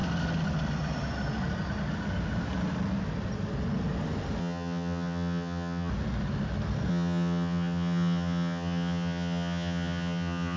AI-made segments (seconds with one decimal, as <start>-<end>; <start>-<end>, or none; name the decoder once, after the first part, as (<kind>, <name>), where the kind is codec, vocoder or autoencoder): 4.4-5.9 (vocoder, HiFi-GAN); 6.9-10.6